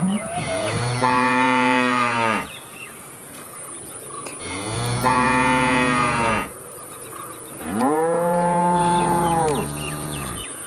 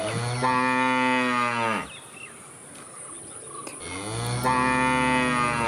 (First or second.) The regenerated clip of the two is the first